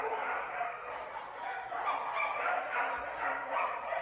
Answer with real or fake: fake